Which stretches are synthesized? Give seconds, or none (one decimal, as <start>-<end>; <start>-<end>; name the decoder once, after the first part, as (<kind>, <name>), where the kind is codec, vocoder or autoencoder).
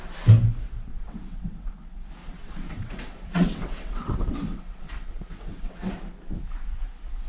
0.9-1.7 (vocoder, WaveNeXt); 2.2-5.9